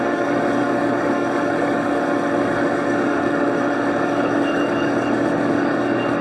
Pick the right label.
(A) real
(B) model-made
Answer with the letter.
B